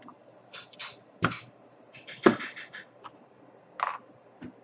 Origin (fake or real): real